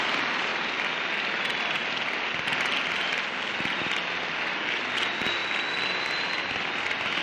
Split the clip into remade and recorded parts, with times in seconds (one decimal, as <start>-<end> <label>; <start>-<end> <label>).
0.0-7.2 recorded